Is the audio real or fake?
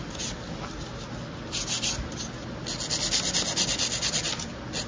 real